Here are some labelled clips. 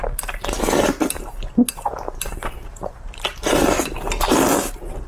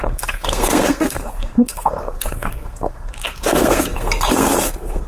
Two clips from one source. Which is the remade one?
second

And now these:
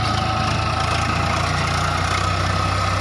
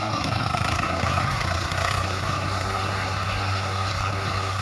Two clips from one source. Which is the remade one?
second